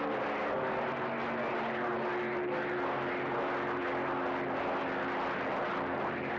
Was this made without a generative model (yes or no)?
yes